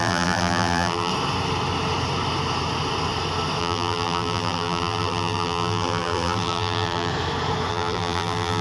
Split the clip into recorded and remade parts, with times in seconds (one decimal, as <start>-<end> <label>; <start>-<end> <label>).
0.0-1.1 remade; 1.1-3.6 recorded; 3.6-7.1 remade; 7.1-7.7 recorded; 7.7-8.6 remade